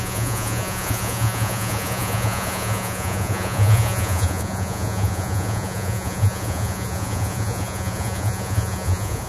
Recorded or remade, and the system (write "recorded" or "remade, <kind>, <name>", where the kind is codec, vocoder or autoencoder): remade, vocoder, Vocos